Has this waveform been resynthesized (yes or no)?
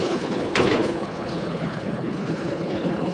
yes